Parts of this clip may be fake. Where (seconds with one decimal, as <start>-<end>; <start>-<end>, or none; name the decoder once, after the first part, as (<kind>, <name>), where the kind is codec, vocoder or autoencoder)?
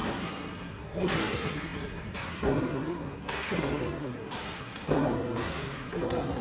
0.0-6.4 (codec, SNAC)